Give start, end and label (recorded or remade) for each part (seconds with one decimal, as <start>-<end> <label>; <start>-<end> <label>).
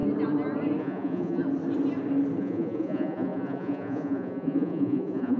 0.0-0.8 recorded; 0.8-1.4 remade; 1.4-2.4 recorded; 2.4-5.4 remade